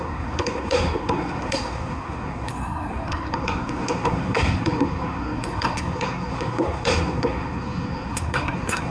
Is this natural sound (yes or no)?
no